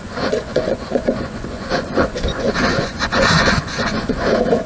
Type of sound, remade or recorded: remade